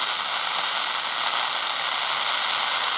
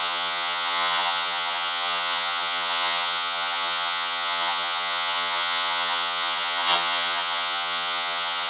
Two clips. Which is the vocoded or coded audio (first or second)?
second